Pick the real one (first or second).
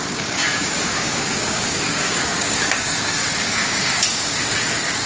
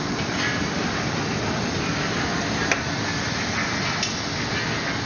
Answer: second